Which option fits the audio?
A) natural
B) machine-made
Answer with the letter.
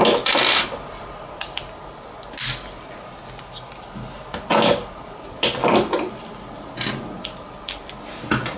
A